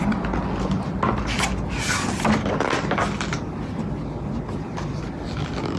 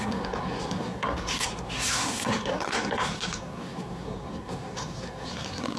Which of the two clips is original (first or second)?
first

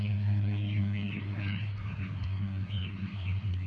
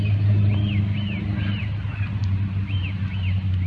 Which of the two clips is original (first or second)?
second